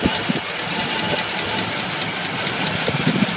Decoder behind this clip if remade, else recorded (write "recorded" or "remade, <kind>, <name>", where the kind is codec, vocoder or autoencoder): recorded